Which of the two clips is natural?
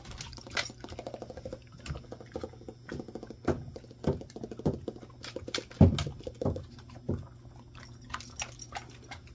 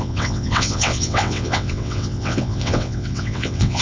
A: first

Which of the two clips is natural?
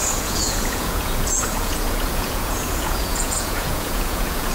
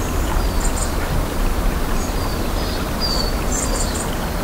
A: second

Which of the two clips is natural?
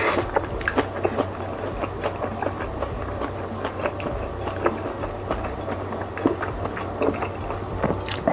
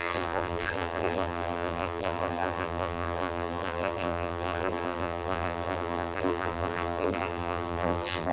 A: first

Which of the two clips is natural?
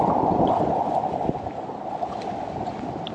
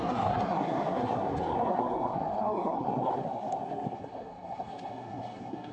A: first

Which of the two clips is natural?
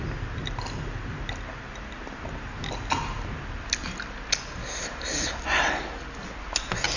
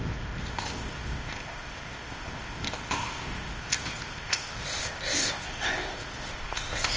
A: first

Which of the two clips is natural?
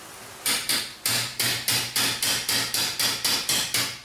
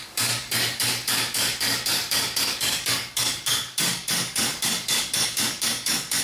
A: first